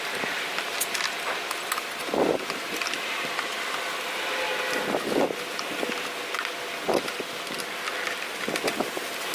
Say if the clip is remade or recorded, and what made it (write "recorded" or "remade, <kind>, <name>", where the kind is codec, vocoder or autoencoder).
recorded